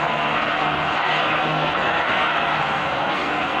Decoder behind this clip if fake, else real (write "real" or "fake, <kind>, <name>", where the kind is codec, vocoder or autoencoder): fake, codec, SNAC